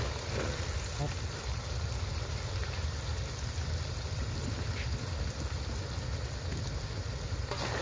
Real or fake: real